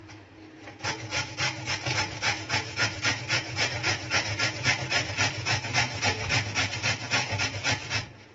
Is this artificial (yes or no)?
yes